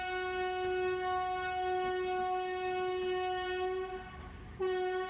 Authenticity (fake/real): real